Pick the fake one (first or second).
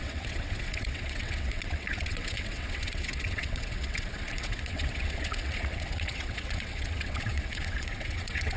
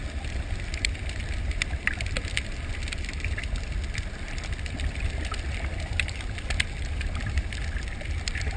first